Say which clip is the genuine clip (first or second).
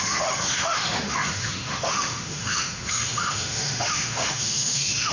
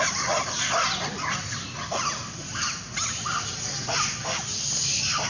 second